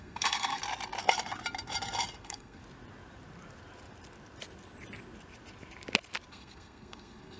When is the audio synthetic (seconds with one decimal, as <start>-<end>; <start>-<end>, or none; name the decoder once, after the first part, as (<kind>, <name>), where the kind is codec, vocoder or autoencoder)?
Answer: 0.0-0.6 (codec, SNAC); 2.2-2.6; 6.3-7.4